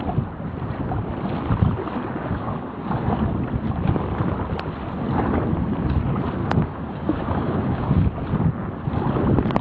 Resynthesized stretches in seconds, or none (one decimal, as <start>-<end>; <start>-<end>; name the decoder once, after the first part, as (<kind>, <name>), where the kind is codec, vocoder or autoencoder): 2.2-3.0 (codec, DAC); 6.4-8.1